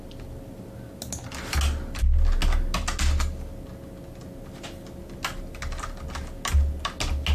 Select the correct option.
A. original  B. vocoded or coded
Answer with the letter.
A